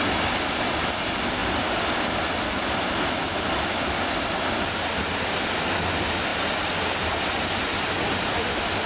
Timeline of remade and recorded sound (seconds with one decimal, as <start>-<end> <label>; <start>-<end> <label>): 0.0-8.9 recorded